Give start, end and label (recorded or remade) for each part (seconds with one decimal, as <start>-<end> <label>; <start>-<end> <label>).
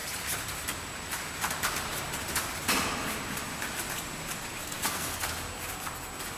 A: 0.0-4.6 recorded; 4.6-5.3 remade; 5.3-6.4 recorded